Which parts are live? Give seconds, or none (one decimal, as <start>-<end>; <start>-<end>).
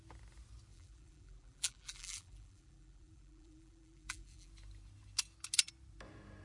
0.0-0.7; 4.5-6.4